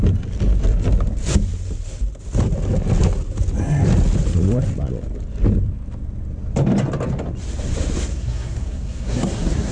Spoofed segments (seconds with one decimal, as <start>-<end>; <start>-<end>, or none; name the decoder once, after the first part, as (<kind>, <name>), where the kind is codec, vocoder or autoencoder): 8.1-9.7 (codec, SNAC)